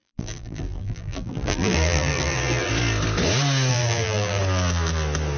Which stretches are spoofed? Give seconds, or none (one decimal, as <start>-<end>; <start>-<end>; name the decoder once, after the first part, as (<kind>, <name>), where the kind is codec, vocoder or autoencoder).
0.0-2.7 (vocoder, BigVGAN v2); 3.7-4.4